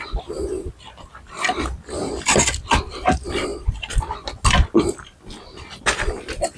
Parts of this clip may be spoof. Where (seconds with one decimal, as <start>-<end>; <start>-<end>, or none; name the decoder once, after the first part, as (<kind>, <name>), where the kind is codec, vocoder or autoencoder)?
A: none